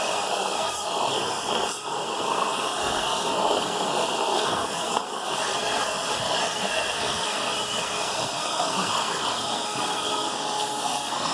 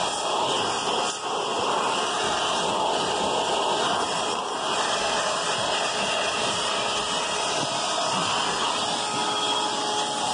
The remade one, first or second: first